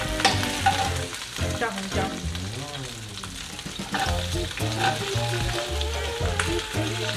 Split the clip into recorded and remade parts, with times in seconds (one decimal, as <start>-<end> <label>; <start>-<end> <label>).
0.0-7.2 recorded